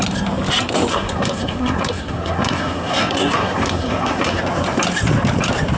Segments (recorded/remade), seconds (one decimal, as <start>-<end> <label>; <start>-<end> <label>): 0.0-0.9 recorded; 0.9-4.4 remade; 4.4-5.8 recorded